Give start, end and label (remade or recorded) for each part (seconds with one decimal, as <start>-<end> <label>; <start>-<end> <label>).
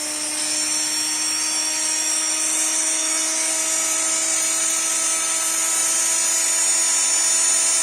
0.0-0.4 recorded; 0.4-3.5 remade; 3.5-7.8 recorded